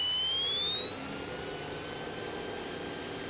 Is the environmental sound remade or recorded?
recorded